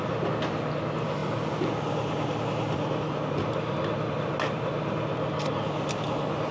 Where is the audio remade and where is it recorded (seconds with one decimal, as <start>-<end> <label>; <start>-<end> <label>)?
0.0-6.5 recorded

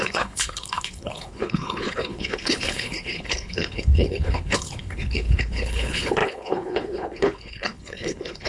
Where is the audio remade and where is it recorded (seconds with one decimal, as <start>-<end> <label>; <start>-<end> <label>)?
0.0-8.5 remade

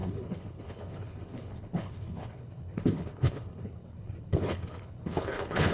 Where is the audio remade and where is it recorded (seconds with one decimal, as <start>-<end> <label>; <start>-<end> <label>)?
0.0-5.7 remade